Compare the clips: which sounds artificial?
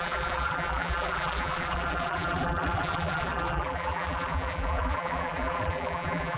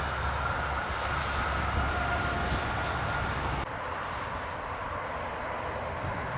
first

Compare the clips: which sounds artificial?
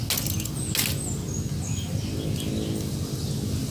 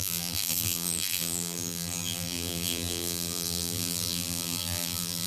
second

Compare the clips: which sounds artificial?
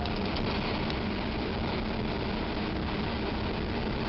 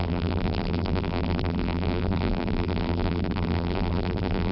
second